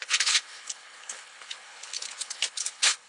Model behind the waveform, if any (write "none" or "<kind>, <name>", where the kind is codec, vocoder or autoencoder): codec, HILCodec